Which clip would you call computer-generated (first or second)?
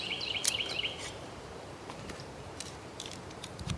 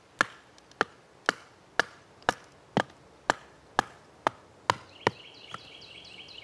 first